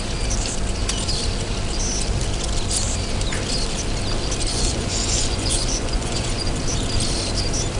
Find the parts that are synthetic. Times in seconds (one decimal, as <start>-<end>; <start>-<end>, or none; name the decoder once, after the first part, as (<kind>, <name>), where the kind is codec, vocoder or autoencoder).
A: 4.5-6.5 (vocoder, Vocos)